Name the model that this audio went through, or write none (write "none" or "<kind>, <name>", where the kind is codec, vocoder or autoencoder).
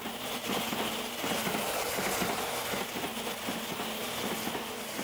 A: none